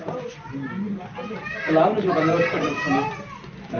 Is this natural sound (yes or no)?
yes